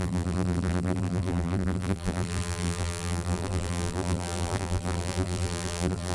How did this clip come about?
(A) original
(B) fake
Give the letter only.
B